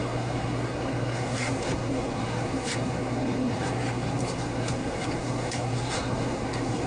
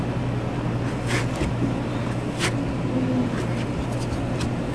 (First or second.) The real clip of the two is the second